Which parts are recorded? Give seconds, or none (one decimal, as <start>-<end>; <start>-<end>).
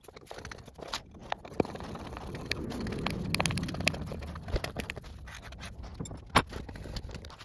0.0-7.4